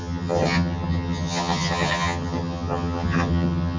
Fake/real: fake